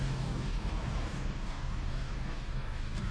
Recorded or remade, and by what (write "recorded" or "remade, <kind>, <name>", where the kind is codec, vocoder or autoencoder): remade, codec, DAC